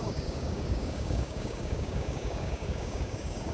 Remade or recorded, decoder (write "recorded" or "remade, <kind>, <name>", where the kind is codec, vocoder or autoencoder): remade, codec, DAC